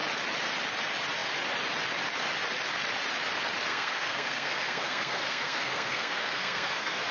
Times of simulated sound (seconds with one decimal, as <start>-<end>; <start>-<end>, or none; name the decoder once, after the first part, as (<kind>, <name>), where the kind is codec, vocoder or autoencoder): 3.7-7.1 (codec, SNAC)